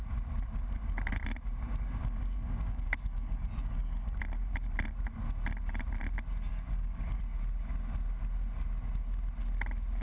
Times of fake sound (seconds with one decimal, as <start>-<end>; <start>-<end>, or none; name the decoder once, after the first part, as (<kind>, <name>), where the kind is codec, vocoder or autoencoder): 2.0-4.2 (codec, DAC); 6.5-7.2